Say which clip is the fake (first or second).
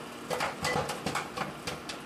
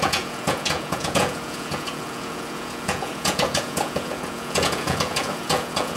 second